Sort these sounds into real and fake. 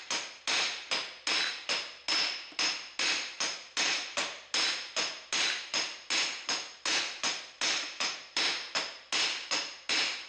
real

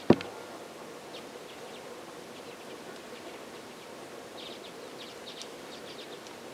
real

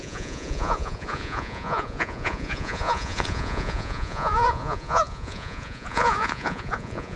fake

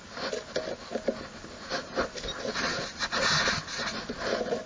real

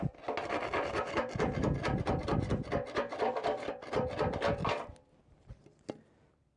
real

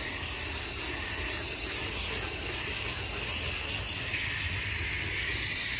real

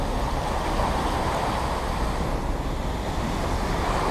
real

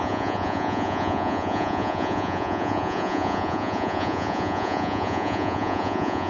fake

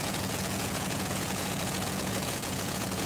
fake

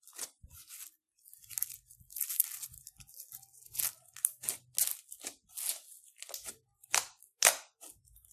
real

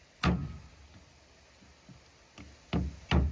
real